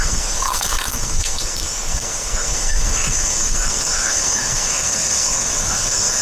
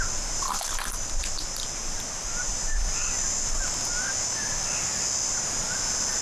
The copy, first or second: first